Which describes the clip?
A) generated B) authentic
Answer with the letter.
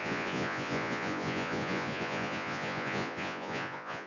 A